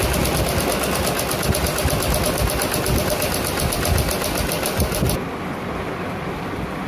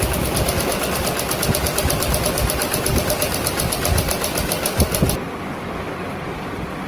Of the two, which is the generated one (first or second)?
second